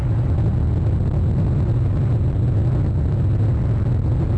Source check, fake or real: real